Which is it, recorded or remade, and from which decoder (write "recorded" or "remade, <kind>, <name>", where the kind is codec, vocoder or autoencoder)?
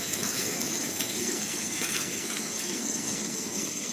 remade, codec, SNAC